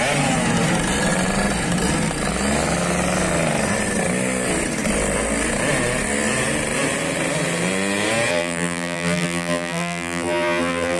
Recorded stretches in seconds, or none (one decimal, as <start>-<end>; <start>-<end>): 0.0-8.3